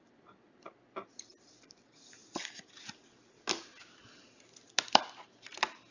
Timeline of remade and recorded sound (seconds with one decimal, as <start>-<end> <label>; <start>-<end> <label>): 0.0-2.2 remade; 2.2-4.3 recorded; 4.3-5.9 remade